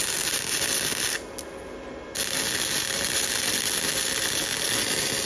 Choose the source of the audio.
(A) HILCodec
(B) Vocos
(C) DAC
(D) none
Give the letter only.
D